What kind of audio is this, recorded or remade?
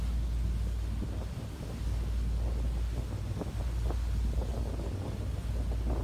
recorded